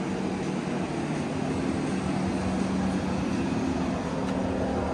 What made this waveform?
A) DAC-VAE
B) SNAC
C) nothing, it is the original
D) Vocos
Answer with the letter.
C